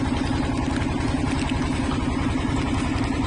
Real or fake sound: real